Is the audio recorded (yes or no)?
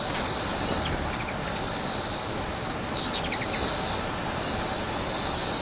yes